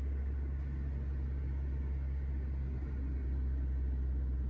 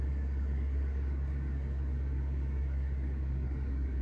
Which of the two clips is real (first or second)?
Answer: first